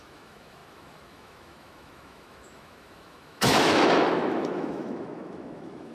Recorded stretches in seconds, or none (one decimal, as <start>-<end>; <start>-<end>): none